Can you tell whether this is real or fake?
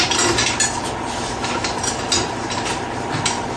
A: real